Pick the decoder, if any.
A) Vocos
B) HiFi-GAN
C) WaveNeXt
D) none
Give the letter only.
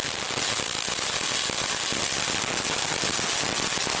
D